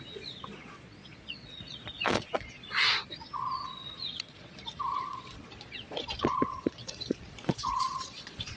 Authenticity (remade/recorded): remade